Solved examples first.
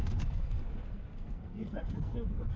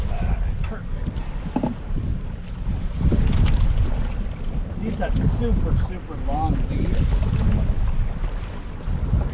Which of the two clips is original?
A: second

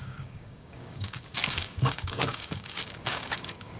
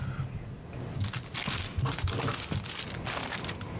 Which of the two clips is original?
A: second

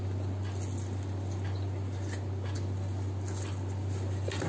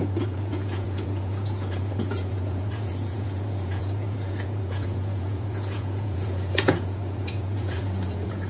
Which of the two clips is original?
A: first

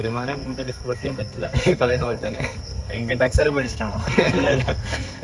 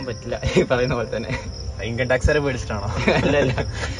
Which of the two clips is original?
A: second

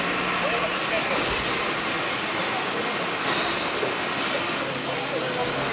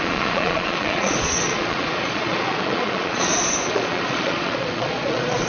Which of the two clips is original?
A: first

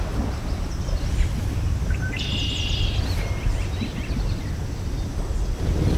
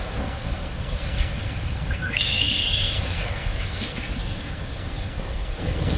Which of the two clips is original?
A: first